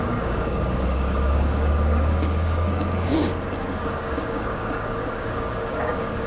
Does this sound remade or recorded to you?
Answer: remade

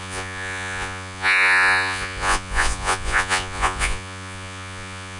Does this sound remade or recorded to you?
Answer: remade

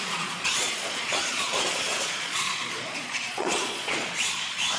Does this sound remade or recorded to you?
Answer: remade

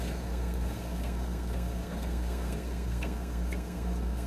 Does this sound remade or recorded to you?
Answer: remade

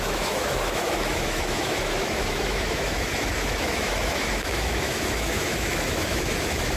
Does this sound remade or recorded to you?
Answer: remade